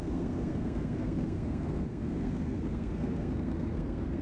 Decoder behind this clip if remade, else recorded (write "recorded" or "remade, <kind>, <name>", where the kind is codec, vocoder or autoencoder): remade, codec, SNAC